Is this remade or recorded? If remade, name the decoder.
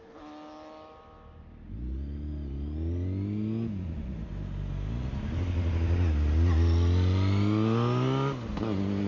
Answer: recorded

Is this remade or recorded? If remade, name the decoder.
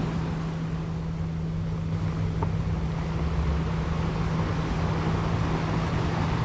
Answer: recorded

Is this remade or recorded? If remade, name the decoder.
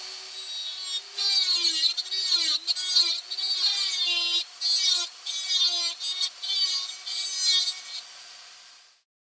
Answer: recorded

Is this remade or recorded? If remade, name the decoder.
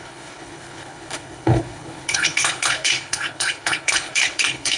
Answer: remade, codec, HILCodec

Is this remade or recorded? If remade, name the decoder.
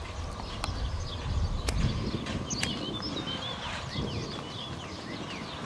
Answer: recorded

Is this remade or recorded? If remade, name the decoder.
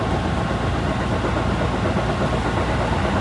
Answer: recorded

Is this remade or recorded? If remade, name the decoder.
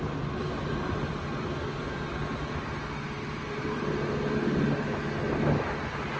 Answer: recorded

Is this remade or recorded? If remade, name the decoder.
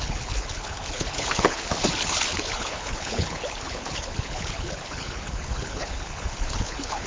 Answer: remade, codec, HILCodec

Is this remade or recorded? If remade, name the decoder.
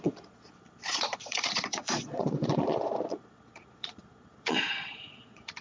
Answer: remade, vocoder, Vocos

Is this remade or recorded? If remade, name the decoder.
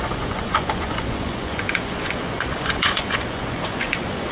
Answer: remade, vocoder, Vocos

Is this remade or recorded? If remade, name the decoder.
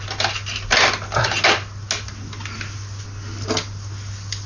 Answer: recorded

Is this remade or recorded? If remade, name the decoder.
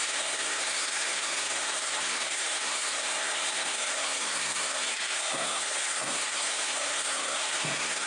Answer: remade, codec, SNAC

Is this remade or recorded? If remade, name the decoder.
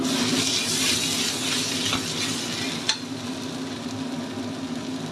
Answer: recorded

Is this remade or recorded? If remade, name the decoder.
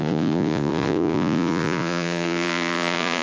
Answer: remade, vocoder, Vocos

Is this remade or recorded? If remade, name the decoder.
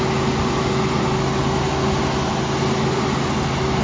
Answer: recorded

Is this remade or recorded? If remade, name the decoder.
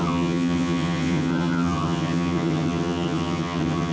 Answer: remade, vocoder, HiFi-GAN